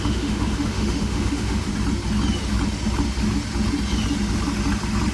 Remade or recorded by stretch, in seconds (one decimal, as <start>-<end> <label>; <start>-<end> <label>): 0.0-1.7 remade; 1.7-5.1 recorded